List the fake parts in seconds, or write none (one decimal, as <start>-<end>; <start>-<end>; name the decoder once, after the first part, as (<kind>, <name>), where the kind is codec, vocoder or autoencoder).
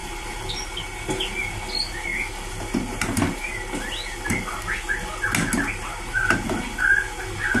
0.0-0.5 (vocoder, BigVGAN v2)